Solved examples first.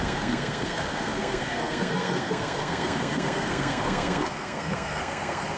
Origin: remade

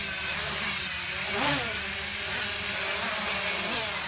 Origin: recorded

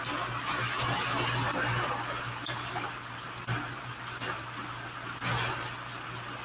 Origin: recorded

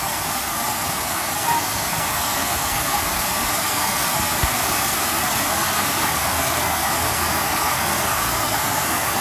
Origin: remade